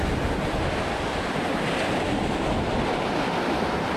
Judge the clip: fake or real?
real